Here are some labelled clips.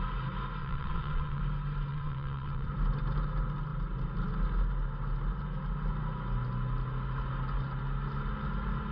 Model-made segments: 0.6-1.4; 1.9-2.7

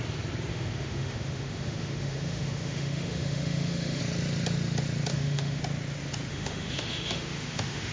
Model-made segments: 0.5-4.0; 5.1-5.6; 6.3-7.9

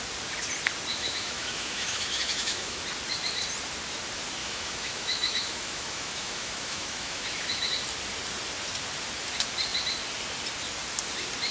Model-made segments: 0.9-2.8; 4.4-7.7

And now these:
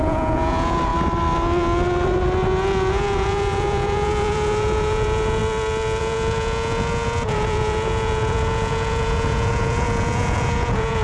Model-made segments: 0.0-0.9; 2.9-5.4; 6.0-11.0

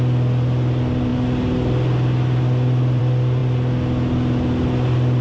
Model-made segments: none

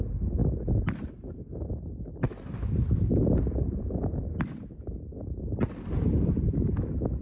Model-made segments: none

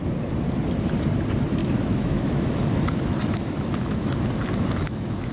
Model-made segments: 1.6-4.3; 4.8-5.3

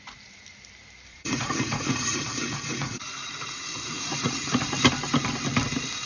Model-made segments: 1.1-4.8